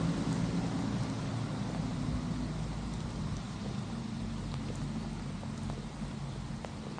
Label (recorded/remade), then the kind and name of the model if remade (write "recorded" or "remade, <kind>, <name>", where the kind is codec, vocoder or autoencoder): recorded